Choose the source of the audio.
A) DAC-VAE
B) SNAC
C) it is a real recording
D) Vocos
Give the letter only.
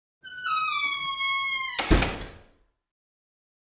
C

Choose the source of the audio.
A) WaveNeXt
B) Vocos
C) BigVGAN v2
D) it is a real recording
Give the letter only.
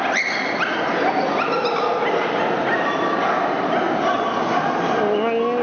D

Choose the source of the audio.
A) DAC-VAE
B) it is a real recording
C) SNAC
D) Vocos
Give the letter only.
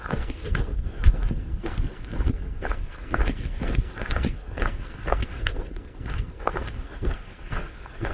C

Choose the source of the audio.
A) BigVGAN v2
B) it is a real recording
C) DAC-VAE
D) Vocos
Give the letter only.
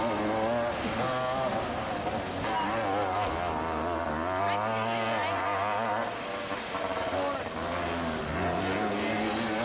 B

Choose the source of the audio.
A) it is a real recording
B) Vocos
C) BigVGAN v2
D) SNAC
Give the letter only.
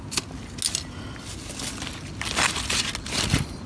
A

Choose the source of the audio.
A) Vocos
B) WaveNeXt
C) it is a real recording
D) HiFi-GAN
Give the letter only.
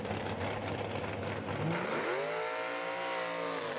C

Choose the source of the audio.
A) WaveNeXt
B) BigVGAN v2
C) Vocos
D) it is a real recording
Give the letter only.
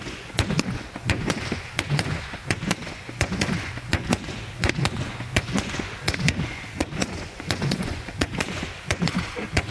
C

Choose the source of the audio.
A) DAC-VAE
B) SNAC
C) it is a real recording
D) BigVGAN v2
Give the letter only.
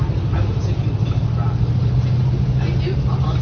C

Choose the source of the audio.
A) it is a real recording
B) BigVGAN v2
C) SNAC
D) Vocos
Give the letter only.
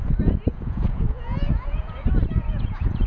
D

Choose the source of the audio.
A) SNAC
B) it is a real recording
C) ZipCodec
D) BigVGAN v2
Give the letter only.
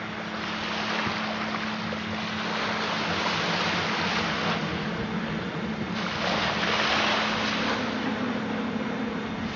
B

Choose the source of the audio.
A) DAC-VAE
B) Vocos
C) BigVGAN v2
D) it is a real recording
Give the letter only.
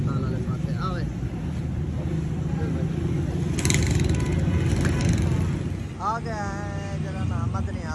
D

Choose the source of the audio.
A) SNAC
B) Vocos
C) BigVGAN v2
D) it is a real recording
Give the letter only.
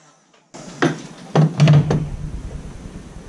D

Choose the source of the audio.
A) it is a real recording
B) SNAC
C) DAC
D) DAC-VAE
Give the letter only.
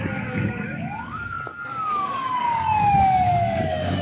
C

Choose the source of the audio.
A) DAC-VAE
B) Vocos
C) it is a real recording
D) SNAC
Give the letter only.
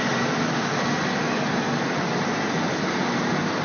C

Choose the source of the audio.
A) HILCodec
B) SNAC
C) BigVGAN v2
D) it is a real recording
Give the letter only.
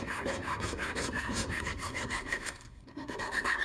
B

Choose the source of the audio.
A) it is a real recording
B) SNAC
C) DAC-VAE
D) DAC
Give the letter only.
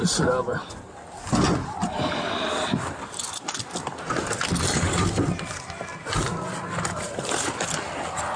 A